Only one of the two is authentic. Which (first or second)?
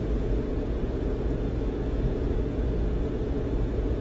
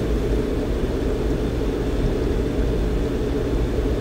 second